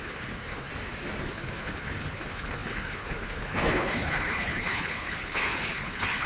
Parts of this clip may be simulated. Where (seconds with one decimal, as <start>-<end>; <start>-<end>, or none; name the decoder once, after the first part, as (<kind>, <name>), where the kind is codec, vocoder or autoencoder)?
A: 0.0-0.7 (codec, HILCodec); 1.2-6.3